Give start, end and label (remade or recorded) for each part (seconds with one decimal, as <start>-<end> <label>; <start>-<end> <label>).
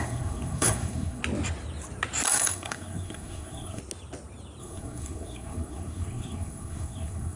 0.0-1.2 remade; 1.2-2.3 recorded; 2.3-3.8 remade; 3.8-4.6 recorded; 4.6-7.4 remade